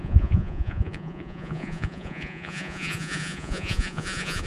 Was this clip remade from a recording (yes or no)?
yes